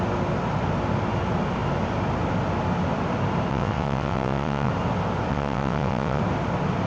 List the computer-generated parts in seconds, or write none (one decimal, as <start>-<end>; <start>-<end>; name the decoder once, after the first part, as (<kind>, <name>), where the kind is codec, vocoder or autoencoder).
3.5-4.7 (vocoder, WaveNeXt); 5.3-6.2